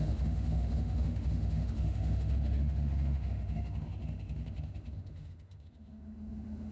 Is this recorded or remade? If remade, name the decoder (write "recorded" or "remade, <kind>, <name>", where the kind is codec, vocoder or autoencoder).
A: remade, autoencoder, DAC-VAE